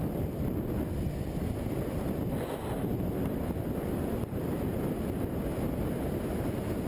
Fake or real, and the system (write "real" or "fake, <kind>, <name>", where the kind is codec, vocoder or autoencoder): real